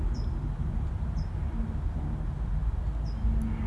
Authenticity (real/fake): real